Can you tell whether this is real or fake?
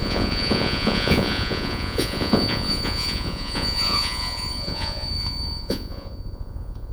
fake